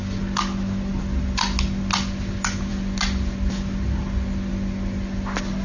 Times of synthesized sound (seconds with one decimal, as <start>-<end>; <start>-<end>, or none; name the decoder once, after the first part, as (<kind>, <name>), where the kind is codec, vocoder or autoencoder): none